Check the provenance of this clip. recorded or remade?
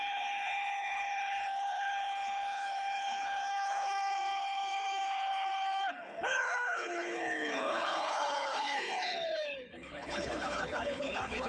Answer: remade